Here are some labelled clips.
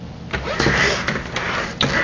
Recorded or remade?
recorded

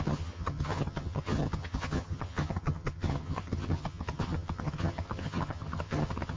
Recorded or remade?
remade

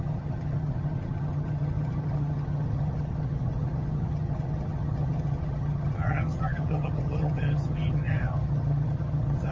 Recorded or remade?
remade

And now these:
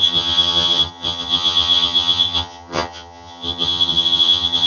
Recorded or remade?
remade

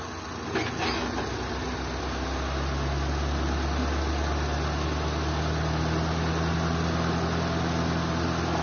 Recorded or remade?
recorded